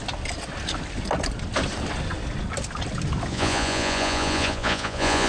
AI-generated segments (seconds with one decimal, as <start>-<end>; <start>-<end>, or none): 3.3-5.3